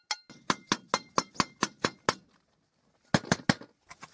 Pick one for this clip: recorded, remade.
recorded